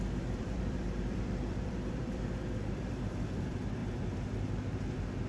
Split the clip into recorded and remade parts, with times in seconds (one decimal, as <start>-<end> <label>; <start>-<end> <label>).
0.0-3.8 remade; 3.8-5.3 recorded